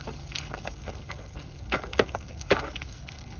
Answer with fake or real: fake